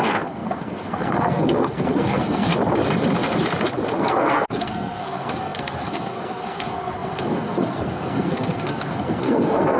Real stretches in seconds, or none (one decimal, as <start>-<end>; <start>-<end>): 2.5-4.0